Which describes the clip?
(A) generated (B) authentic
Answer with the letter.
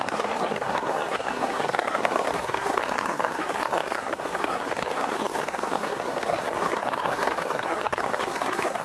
A